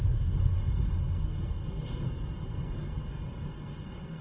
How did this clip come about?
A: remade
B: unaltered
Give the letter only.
A